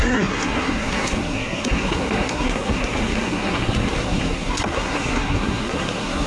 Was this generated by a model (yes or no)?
yes